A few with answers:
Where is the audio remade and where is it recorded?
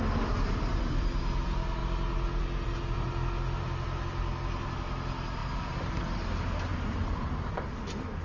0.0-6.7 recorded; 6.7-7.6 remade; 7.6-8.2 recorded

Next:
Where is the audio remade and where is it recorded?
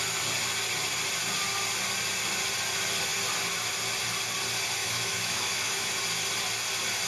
0.0-4.8 recorded; 4.8-5.9 remade; 5.9-7.1 recorded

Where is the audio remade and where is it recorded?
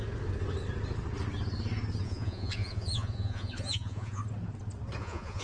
0.0-2.0 recorded; 2.0-4.2 remade; 4.2-5.0 recorded; 5.0-5.4 remade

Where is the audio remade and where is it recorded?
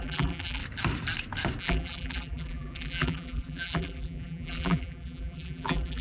0.0-0.6 remade; 0.6-1.6 recorded; 1.6-6.0 remade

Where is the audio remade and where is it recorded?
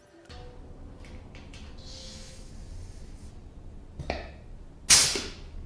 0.0-2.0 recorded; 2.0-2.5 remade; 2.5-5.7 recorded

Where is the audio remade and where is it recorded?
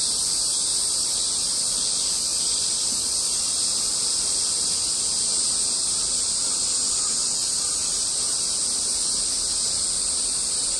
0.0-10.8 recorded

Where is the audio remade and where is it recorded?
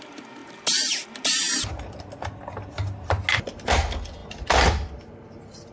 0.0-5.7 recorded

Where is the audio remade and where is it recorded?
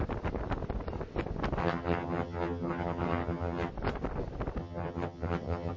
0.0-1.6 recorded; 1.6-3.7 remade; 3.7-4.6 recorded; 4.6-5.8 remade